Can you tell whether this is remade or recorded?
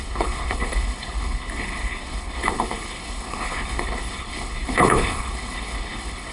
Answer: remade